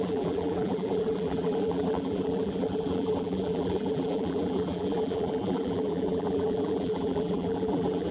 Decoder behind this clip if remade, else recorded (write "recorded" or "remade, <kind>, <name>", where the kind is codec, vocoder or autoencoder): remade, vocoder, BigVGAN v2